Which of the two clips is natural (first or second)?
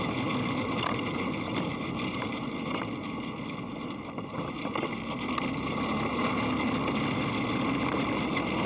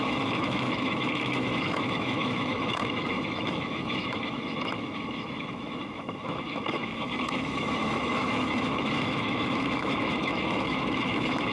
first